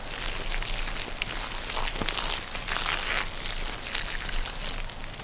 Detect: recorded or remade recorded